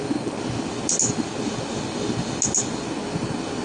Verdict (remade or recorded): recorded